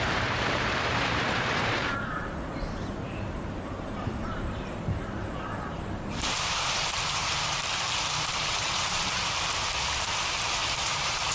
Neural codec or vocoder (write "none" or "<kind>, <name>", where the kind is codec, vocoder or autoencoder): vocoder, BigVGAN v2